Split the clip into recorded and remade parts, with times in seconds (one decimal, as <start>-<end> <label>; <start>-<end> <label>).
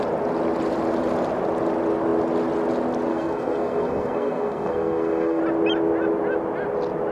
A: 0.0-3.1 recorded; 3.1-5.4 remade; 5.4-7.1 recorded